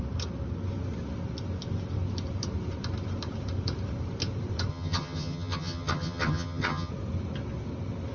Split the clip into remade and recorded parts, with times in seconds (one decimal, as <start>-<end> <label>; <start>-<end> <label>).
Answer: 0.0-4.7 recorded; 4.7-6.9 remade; 6.9-8.1 recorded